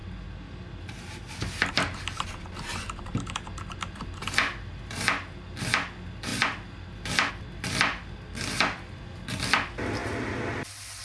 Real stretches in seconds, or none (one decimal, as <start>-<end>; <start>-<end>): 0.0-11.0